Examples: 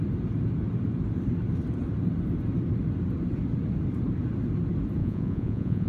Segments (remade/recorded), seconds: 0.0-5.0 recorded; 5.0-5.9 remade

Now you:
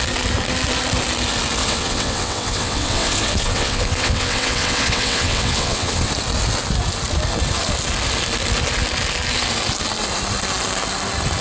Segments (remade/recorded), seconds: 0.0-1.6 recorded; 1.6-6.1 remade; 6.1-11.4 recorded

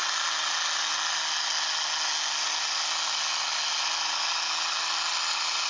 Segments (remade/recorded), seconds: 0.0-5.7 recorded

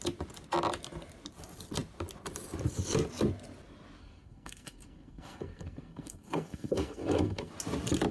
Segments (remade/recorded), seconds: 0.0-4.0 recorded; 4.0-7.5 remade; 7.5-8.1 recorded

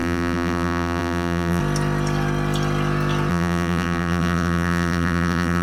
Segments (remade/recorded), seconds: 0.0-1.6 remade; 1.6-3.3 recorded; 3.3-5.6 remade

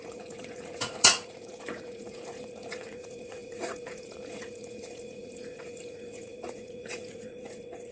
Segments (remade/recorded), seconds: 0.0-7.9 remade

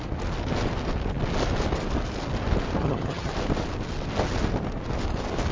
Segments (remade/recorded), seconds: 0.0-2.8 recorded; 2.8-3.3 remade; 3.3-5.5 recorded

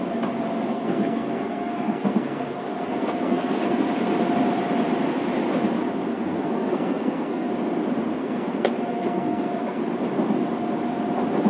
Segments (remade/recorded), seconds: 0.0-0.7 recorded; 0.7-3.9 remade; 3.9-6.1 recorded; 6.1-7.5 remade; 7.5-8.2 recorded; 8.2-9.8 remade; 9.8-11.5 recorded